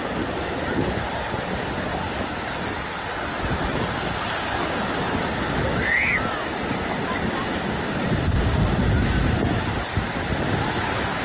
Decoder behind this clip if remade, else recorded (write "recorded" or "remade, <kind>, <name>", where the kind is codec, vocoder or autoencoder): recorded